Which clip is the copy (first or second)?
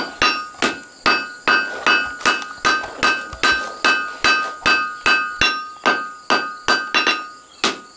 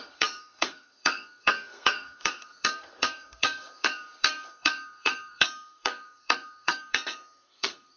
second